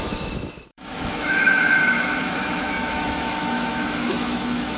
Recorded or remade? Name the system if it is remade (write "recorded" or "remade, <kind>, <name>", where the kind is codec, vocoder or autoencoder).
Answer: remade, autoencoder, DAC-VAE